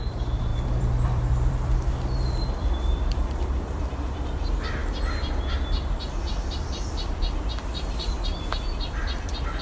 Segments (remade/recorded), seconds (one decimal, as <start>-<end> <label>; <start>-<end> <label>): 0.0-4.8 remade; 4.8-6.3 recorded; 6.3-9.6 remade